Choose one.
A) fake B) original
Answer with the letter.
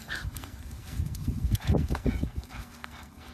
A